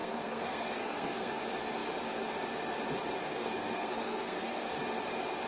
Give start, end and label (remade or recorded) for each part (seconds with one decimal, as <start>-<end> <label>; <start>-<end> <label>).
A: 0.0-1.4 remade; 1.4-3.2 recorded; 3.2-4.7 remade; 4.7-5.5 recorded